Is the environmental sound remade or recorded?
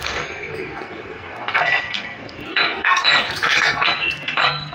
remade